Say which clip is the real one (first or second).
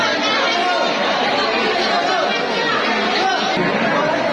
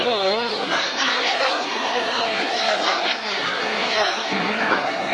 first